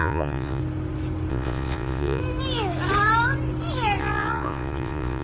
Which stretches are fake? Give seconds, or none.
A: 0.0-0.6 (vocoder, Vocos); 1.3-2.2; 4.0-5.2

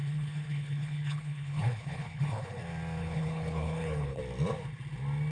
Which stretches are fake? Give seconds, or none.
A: 0.0-2.6 (codec, HILCodec); 3.0-4.2

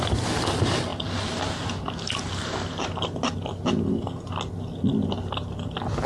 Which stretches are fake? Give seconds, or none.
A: none

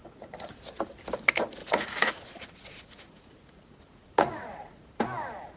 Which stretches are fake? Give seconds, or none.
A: 0.0-0.6 (vocoder, Vocos); 1.6-5.0

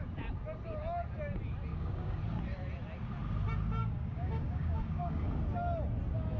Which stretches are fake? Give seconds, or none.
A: 1.7-2.2 (codec, DAC); 3.8-5.3

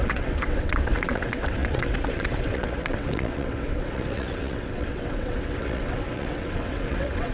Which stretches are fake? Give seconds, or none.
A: 0.0-7.3 (vocoder, WaveNeXt)